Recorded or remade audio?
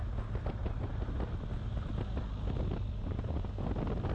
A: recorded